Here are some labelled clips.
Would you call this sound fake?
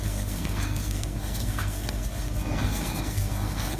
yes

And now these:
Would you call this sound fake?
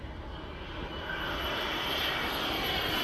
no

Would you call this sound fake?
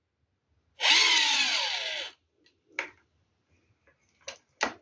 no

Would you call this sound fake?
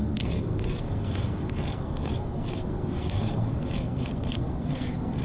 yes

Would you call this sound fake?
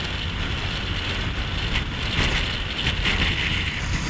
no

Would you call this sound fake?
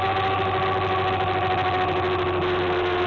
no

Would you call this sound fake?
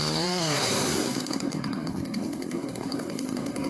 yes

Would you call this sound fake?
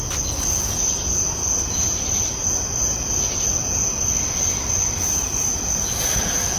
no